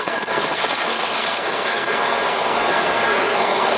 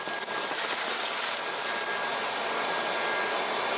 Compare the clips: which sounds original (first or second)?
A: second